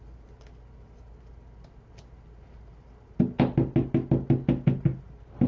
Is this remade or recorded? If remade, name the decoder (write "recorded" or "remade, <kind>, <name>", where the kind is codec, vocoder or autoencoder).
recorded